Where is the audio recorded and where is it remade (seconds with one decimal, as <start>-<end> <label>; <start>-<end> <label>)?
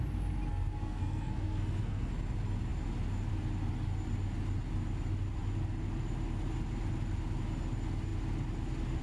0.0-0.5 recorded; 0.5-2.1 remade; 2.1-9.0 recorded